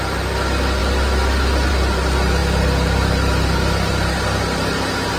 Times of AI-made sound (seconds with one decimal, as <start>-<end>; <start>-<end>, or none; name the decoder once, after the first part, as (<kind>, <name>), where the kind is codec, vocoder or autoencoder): none